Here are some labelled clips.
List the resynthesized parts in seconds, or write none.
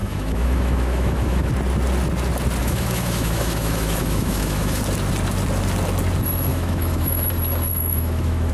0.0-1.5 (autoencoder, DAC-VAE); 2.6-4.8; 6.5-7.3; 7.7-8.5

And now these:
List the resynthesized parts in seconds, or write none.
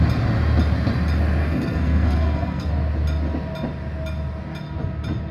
1.4-2.7 (codec, SNAC)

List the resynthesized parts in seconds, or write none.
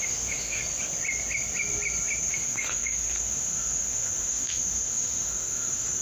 0.0-0.6 (autoencoder, DAC-VAE); 2.3-6.0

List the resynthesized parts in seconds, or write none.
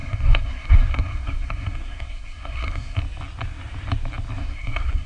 0.0-3.0 (codec, SNAC); 4.4-5.1